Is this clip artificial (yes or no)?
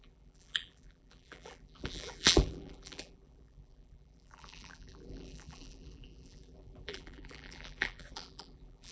yes